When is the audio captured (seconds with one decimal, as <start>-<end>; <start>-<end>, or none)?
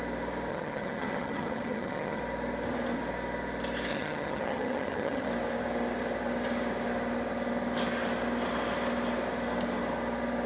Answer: 0.0-0.5; 2.2-3.9; 5.3-10.5